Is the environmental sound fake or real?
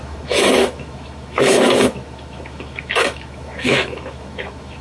fake